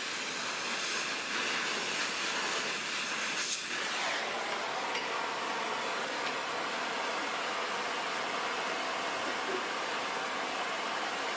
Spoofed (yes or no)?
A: no